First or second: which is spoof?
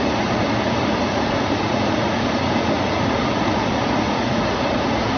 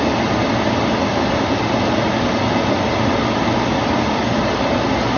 first